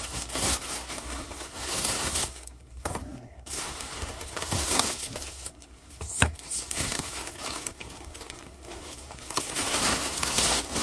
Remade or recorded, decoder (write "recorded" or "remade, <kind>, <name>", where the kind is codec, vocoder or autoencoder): remade, codec, SNAC